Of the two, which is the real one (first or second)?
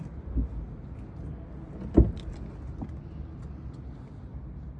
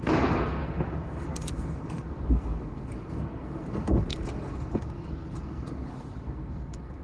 first